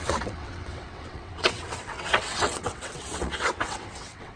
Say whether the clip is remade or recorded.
remade